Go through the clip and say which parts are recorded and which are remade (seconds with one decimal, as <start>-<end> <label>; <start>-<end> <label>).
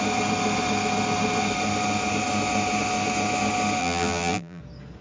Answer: 0.0-3.8 recorded; 3.8-4.6 remade; 4.6-5.0 recorded